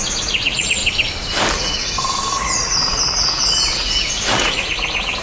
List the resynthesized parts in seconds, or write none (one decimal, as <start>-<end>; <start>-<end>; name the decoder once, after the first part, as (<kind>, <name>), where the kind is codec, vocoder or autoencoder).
0.0-0.8 (vocoder, Vocos); 1.5-5.2